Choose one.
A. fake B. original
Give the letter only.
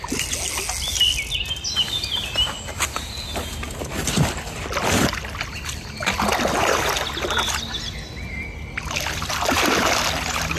B